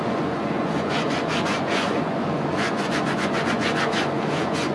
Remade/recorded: remade